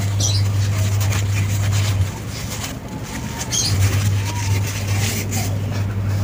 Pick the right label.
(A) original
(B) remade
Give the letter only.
A